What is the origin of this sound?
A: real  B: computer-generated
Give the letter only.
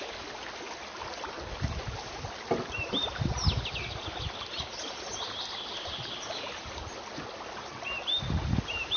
A